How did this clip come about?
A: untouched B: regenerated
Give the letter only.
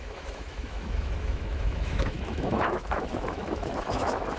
B